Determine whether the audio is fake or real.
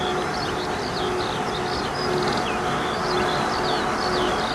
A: real